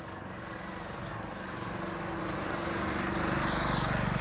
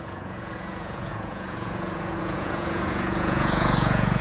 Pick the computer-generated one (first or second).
second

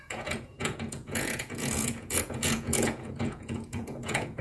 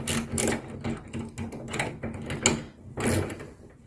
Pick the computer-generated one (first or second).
first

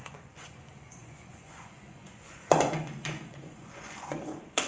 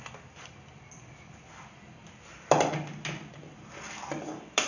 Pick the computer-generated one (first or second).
first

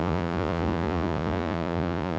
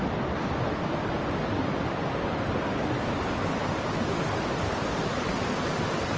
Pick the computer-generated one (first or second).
first